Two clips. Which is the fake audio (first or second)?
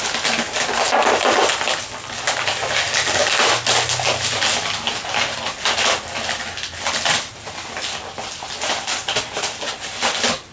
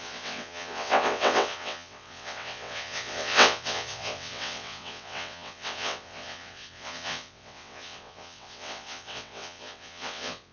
second